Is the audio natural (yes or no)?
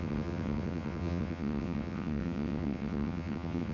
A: no